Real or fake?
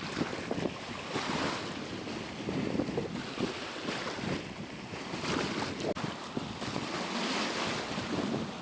real